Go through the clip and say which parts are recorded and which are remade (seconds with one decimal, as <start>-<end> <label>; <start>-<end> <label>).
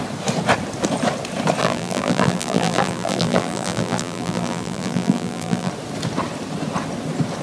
0.0-1.6 recorded; 1.6-5.7 remade; 5.7-7.4 recorded